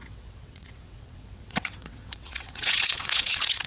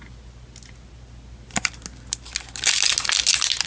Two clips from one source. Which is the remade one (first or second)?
first